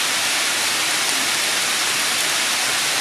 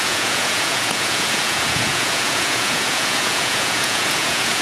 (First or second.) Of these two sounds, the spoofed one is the second